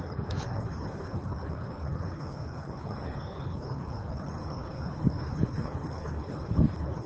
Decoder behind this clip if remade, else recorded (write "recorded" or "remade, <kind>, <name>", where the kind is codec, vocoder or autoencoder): remade, codec, HILCodec